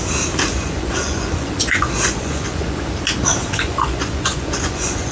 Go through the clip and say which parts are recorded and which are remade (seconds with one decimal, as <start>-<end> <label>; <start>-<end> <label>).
0.0-0.5 recorded; 0.5-2.8 remade; 2.8-3.4 recorded; 3.4-5.1 remade